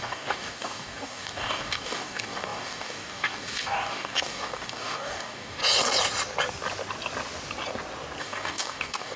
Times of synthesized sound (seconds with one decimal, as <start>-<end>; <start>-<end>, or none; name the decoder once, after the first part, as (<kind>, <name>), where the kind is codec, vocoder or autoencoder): 0.0-5.6 (codec, DAC); 8.2-9.2